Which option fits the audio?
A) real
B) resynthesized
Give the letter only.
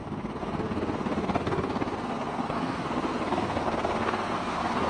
B